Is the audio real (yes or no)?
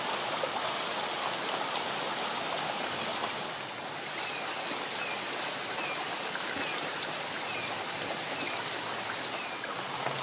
yes